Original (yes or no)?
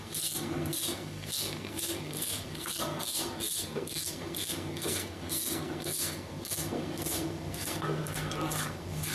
no